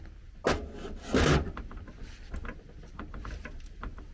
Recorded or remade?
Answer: recorded